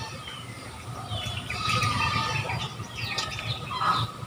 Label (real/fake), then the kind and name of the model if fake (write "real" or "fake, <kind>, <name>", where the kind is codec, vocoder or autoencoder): fake, vocoder, BigVGAN v2